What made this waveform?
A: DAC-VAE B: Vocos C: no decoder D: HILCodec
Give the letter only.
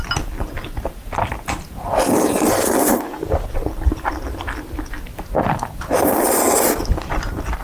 C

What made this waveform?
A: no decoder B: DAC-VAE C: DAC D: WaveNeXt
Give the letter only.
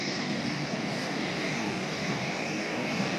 C